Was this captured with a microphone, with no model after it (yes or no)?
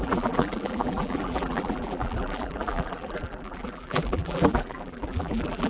no